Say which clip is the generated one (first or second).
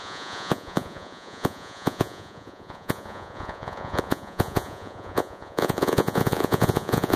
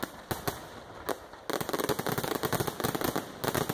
first